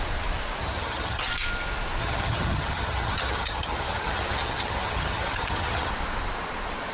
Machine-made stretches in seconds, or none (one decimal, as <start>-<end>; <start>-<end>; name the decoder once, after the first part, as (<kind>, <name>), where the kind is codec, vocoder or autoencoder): 0.6-1.3 (vocoder, HiFi-GAN); 2.0-5.9